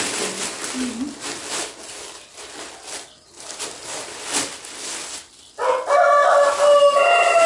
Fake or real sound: real